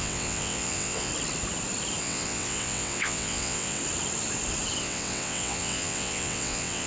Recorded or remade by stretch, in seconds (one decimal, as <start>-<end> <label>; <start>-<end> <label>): 0.0-1.1 remade; 1.1-2.0 recorded; 2.0-3.8 remade; 3.8-4.8 recorded; 4.8-6.9 remade